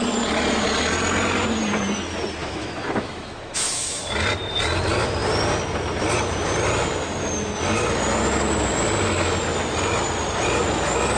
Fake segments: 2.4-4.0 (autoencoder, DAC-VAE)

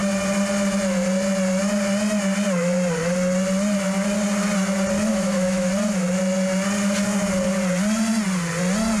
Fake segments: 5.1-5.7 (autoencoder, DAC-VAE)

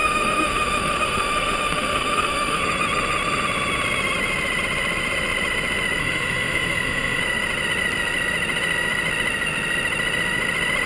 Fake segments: 0.0-2.6 (autoencoder, DAC-VAE); 6.0-7.2